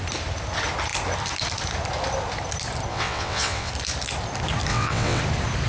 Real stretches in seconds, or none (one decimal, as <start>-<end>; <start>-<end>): 0.0-2.9; 3.7-4.7; 5.2-5.7